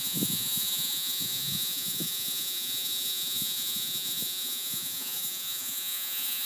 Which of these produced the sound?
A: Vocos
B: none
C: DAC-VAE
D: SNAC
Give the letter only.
A